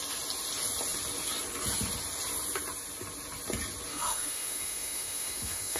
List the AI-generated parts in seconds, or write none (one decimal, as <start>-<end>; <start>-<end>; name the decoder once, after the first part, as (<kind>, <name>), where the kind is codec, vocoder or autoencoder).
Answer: 3.9-5.8 (autoencoder, DAC-VAE)